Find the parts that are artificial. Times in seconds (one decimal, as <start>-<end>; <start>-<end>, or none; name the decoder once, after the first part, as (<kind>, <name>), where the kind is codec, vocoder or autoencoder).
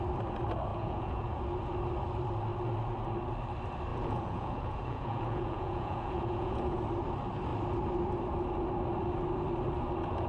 0.7-1.4 (vocoder, Vocos); 3.9-6.8